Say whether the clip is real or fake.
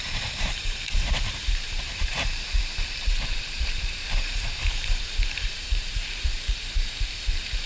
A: fake